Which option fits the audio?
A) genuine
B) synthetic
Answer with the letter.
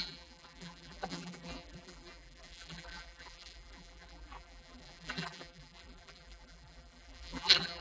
B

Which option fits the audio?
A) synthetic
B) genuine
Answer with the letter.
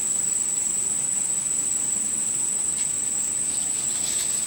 B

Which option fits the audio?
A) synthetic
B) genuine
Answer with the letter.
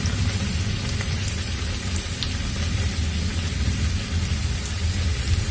B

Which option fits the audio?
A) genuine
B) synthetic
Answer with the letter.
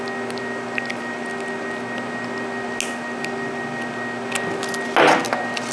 A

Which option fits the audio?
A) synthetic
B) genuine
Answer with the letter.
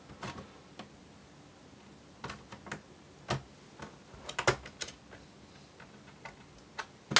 B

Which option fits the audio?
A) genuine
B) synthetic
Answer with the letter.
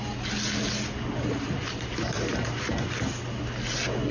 A